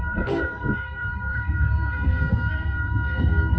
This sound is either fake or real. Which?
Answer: fake